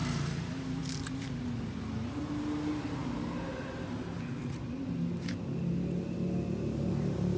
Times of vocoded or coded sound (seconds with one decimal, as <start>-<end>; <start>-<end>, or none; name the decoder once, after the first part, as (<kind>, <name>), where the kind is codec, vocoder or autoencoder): none